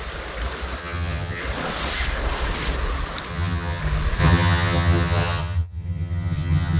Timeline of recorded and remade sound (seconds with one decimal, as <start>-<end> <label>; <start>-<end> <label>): 0.0-0.8 recorded; 0.8-1.4 remade; 1.4-3.3 recorded; 3.3-3.8 remade; 3.8-4.2 recorded; 4.2-6.8 remade